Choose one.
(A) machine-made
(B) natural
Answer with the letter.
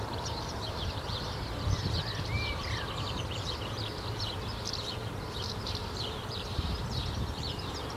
A